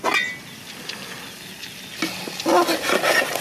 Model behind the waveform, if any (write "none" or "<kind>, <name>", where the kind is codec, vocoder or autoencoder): none